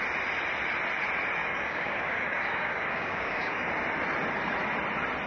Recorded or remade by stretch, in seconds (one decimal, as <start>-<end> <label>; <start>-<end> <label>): 0.0-1.4 recorded; 1.4-3.7 remade; 3.7-5.3 recorded